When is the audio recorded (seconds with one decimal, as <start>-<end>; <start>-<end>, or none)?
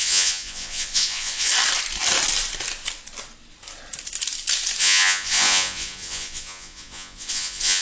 1.5-4.8